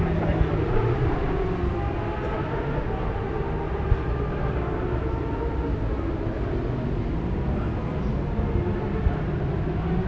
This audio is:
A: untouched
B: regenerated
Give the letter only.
A